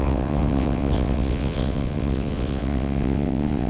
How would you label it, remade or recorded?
remade